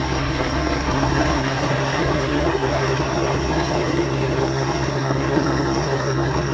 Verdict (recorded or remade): remade